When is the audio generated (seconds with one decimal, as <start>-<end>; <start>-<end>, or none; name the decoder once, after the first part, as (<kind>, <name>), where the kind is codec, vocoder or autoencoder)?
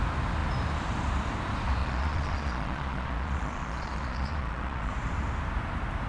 1.8-4.9 (vocoder, Vocos)